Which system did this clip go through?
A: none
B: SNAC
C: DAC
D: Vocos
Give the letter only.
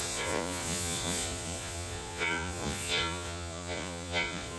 D